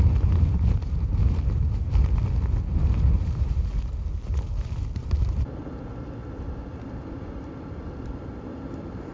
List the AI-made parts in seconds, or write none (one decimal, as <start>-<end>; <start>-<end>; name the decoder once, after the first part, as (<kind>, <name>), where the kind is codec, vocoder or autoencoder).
none